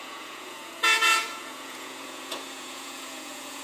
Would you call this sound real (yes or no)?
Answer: no